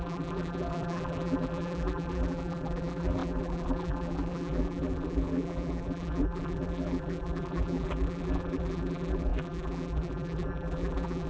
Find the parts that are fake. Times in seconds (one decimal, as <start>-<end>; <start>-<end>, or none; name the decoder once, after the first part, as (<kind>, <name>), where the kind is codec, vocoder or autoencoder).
0.0-11.3 (vocoder, BigVGAN v2)